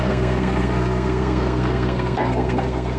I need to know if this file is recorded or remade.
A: remade